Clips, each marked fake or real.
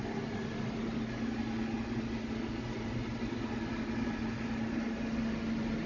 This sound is real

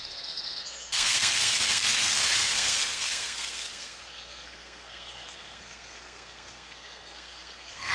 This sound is fake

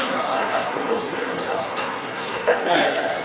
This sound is fake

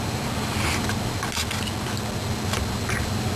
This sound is real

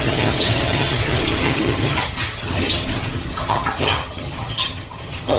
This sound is fake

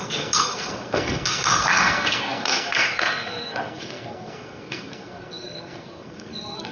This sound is fake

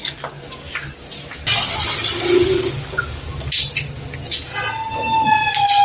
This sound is real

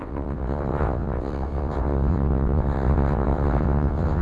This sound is fake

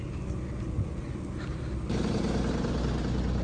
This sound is real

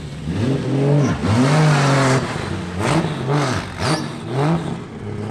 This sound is real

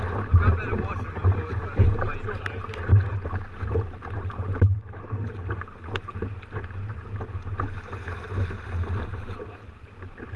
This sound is real